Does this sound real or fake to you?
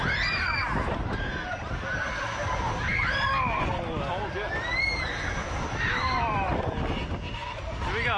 real